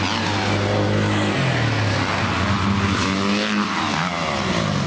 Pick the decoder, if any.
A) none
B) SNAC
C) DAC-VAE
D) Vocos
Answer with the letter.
A